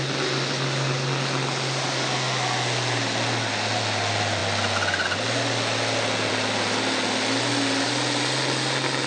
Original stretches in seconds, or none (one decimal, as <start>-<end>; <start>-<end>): 0.0-9.1

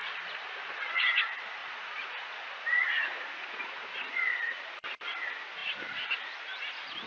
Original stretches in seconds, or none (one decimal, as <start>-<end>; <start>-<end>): 0.6-1.6; 4.7-7.1